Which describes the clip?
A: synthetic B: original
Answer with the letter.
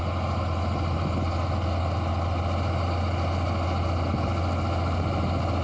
B